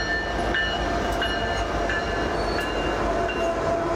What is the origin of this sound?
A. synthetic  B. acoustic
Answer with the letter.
B